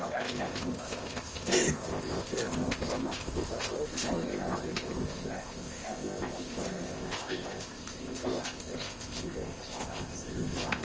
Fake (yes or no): yes